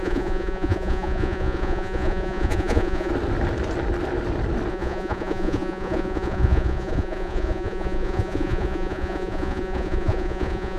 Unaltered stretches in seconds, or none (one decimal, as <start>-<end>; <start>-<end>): 3.1-4.7